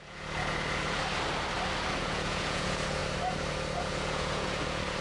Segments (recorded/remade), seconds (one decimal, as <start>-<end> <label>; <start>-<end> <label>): 0.0-1.0 remade; 1.0-2.0 recorded; 2.0-3.0 remade; 3.0-3.8 recorded; 3.8-5.0 remade